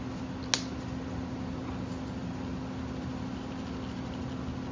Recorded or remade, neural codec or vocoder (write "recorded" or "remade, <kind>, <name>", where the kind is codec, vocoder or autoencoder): recorded